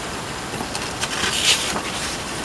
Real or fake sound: real